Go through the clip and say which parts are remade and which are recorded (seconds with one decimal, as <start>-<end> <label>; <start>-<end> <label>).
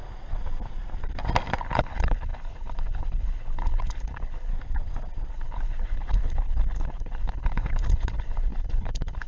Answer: 0.0-1.6 recorded; 1.6-4.5 remade; 4.5-5.3 recorded; 5.3-9.3 remade